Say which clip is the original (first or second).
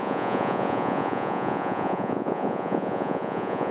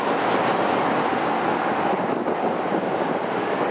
second